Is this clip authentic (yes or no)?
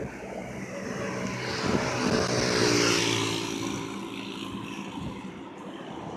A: yes